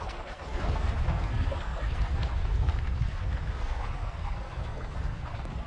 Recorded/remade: remade